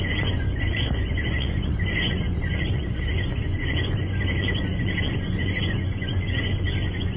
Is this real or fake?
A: fake